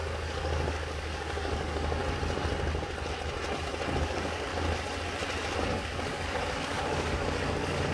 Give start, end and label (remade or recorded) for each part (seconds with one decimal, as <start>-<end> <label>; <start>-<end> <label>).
0.0-2.0 remade; 2.0-4.0 recorded; 4.0-4.5 remade; 4.5-5.6 recorded; 5.6-7.9 remade